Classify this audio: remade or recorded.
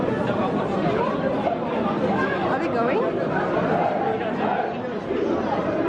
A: recorded